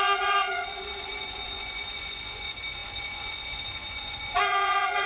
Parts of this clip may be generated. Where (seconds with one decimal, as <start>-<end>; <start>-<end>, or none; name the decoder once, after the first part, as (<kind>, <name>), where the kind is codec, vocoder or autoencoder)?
0.0-5.1 (vocoder, Vocos)